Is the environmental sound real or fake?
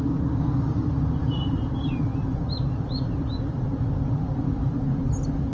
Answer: real